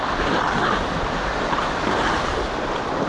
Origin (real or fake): real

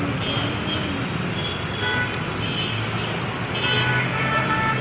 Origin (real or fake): real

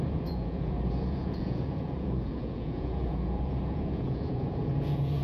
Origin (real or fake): fake